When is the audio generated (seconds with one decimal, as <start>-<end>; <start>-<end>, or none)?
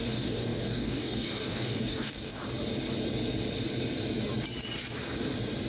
0.0-2.4